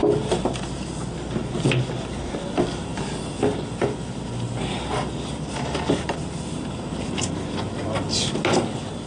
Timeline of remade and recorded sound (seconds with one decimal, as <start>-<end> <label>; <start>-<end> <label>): 0.0-9.1 recorded